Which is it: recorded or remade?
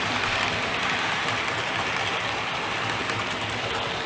recorded